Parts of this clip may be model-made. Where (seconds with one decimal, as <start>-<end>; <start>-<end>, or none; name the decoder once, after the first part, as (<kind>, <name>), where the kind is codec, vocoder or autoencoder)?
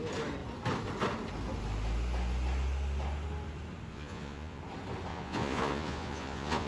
3.9-4.6 (vocoder, Vocos); 5.1-6.7